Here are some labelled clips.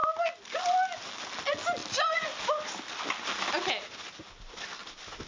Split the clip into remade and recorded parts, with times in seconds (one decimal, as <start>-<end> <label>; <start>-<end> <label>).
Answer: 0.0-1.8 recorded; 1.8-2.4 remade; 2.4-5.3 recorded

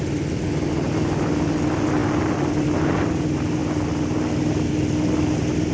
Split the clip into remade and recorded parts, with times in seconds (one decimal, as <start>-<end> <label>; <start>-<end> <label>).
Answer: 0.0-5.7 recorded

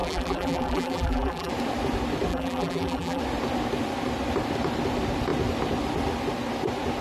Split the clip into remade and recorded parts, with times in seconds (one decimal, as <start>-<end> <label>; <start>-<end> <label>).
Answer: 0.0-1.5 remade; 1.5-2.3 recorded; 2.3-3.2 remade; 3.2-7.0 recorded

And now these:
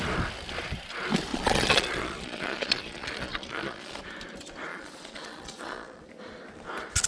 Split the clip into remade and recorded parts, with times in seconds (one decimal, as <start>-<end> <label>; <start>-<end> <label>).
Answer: 0.0-1.3 recorded; 1.3-4.0 remade; 4.0-4.7 recorded; 4.7-6.0 remade; 6.0-7.1 recorded

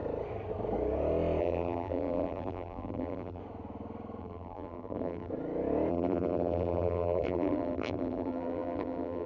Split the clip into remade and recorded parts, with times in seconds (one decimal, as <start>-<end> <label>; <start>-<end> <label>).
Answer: 0.0-1.4 recorded; 1.4-3.4 remade; 3.4-4.2 recorded; 4.2-5.3 remade; 5.3-5.9 recorded; 5.9-9.3 remade